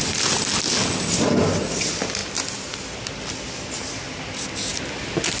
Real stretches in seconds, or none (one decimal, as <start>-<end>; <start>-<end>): 0.0-5.4